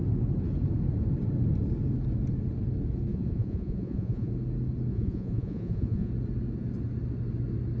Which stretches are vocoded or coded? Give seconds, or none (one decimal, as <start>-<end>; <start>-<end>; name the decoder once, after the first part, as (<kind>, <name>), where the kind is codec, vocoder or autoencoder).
3.1-4.3 (vocoder, Vocos); 4.9-6.1